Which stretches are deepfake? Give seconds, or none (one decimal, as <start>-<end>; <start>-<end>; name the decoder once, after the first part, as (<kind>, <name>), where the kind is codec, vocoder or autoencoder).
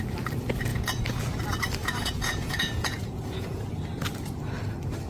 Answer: 0.7-1.2 (vocoder, Vocos); 1.8-3.7